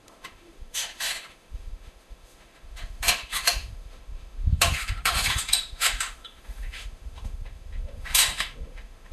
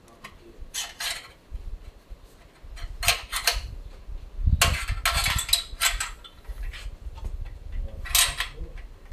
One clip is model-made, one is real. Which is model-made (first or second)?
first